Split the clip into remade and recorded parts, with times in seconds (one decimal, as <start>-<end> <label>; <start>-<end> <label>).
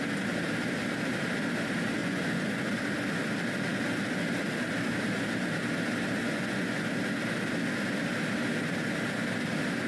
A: 0.0-2.0 recorded; 2.0-2.8 remade; 2.8-6.2 recorded; 6.2-6.9 remade; 6.9-9.9 recorded